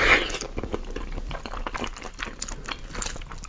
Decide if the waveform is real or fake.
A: real